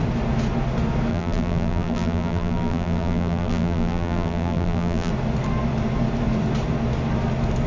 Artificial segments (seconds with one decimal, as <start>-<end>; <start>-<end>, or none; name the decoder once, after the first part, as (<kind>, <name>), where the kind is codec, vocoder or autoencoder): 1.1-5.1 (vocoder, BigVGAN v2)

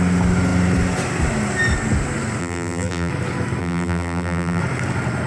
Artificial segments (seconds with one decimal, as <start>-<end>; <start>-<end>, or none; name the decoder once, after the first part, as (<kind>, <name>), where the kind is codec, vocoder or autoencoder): 2.4-3.1 (vocoder, BigVGAN v2); 3.6-4.6

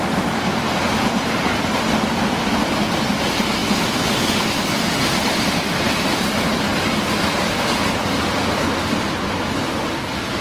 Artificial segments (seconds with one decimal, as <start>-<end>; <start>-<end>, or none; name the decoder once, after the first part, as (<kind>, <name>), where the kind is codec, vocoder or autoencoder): 0.8-1.5 (vocoder, BigVGAN v2)

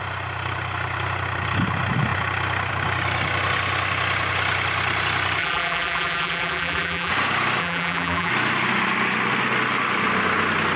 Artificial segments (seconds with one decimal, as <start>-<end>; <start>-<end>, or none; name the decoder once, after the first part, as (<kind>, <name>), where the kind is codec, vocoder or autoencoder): 5.4-7.1 (vocoder, BigVGAN v2); 7.6-8.3

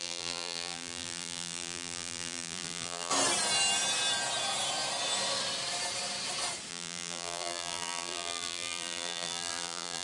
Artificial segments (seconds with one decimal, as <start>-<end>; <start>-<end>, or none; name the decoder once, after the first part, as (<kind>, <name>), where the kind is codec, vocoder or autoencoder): 0.0-3.1 (vocoder, BigVGAN v2); 6.7-10.0